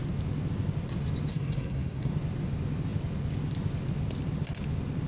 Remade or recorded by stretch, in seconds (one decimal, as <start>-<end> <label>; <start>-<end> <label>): 0.0-1.3 recorded; 1.3-2.1 remade; 2.1-5.1 recorded